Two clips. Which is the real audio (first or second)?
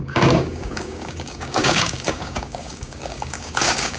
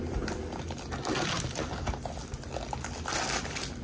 second